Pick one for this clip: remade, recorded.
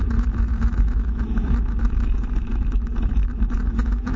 remade